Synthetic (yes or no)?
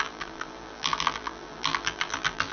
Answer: yes